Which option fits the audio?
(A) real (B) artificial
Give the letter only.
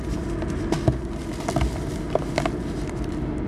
A